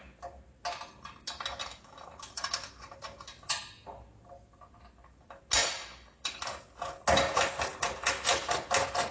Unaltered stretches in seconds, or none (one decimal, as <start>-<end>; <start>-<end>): 0.0-1.7; 3.7-5.6; 6.3-9.1